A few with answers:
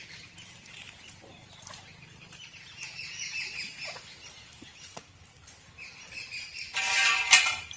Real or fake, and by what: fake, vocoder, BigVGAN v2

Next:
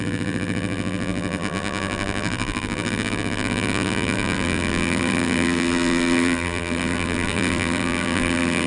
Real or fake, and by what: fake, vocoder, BigVGAN v2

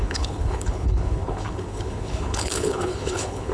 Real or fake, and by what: fake, codec, HILCodec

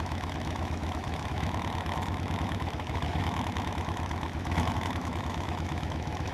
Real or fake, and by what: fake, autoencoder, DAC-VAE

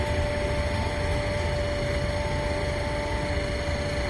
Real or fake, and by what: real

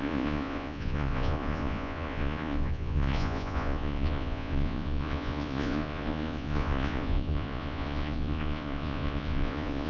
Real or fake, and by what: fake, vocoder, Vocos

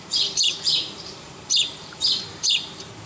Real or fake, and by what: fake, vocoder, BigVGAN v2